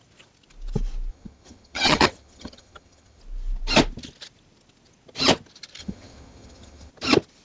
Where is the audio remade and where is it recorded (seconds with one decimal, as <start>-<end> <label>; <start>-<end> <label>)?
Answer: 0.0-1.1 recorded; 1.1-3.2 remade; 3.2-5.8 recorded; 5.8-6.9 remade; 6.9-7.4 recorded